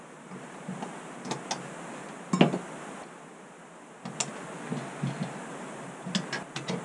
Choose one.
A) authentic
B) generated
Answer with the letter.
A